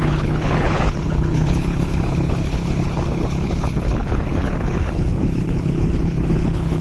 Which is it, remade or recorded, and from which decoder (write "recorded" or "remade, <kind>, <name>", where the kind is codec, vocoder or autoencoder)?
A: remade, codec, HILCodec